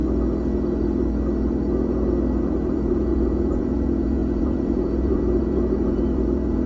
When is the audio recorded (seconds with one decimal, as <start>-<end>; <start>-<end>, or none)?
0.0-2.4